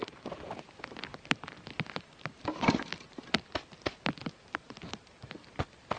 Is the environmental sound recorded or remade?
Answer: recorded